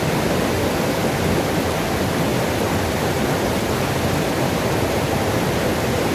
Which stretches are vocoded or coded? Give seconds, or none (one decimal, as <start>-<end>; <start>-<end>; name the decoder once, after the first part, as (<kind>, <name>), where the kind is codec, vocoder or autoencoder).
1.0-1.6 (vocoder, BigVGAN v2)